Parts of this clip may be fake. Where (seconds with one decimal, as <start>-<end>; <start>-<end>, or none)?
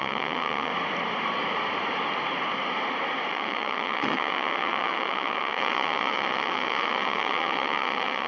0.0-0.7; 3.3-8.3